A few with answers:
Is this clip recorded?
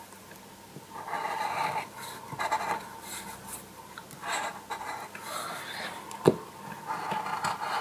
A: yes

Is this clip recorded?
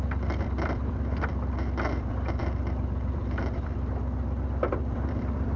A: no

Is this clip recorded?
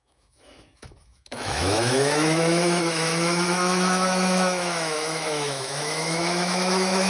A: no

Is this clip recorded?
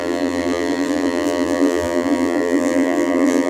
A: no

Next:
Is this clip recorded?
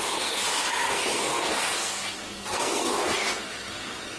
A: no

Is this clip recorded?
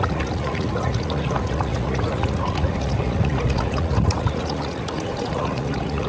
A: no